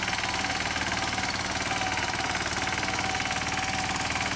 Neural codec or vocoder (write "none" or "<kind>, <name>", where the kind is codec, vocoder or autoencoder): none